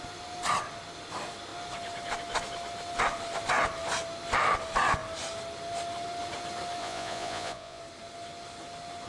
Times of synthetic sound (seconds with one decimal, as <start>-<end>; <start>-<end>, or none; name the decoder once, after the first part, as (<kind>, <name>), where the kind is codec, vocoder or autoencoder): 6.8-7.8 (vocoder, Vocos)